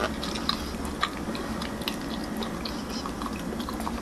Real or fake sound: real